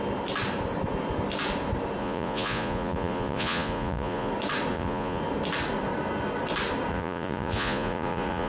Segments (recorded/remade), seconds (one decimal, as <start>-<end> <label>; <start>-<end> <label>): 0.0-2.0 recorded; 2.0-4.3 remade; 4.3-4.7 recorded; 4.7-5.2 remade; 5.2-6.9 recorded; 6.9-8.5 remade